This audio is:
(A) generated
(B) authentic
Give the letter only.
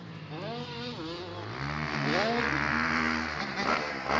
B